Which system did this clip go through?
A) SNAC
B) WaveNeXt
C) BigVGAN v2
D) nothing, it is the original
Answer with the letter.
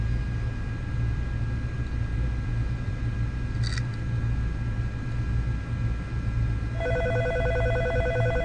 D